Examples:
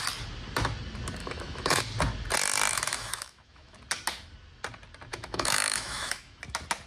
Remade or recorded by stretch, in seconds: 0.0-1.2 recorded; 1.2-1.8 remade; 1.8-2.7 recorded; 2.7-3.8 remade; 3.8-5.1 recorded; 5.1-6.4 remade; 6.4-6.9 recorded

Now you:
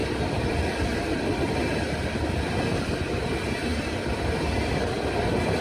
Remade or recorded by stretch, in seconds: 0.0-3.0 remade; 3.0-5.6 recorded

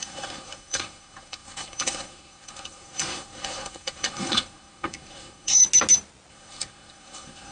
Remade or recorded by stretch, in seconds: 0.0-5.6 remade; 5.6-6.3 recorded; 6.3-7.5 remade

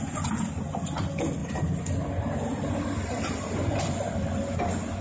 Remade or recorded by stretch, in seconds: 0.0-1.4 recorded; 1.4-4.4 remade; 4.4-5.0 recorded

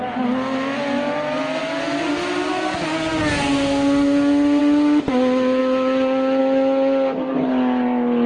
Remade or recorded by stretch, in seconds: 0.0-8.3 recorded

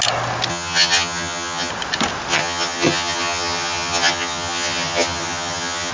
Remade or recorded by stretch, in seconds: 0.0-0.5 recorded; 0.5-1.7 remade; 1.7-2.3 recorded; 2.3-5.9 remade

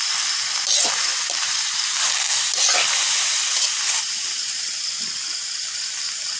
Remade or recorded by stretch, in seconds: 0.0-1.1 recorded; 1.1-2.0 remade; 2.0-6.4 recorded